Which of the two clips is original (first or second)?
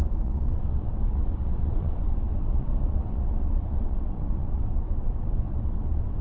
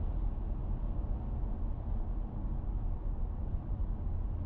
second